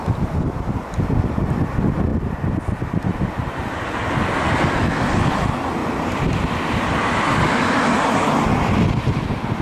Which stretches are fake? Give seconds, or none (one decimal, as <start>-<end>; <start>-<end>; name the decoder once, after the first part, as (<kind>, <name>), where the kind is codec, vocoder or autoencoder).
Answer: 2.1-2.7 (vocoder, BigVGAN v2); 5.8-8.4